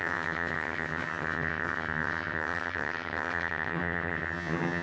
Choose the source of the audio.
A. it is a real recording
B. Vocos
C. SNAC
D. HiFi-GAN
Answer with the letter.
D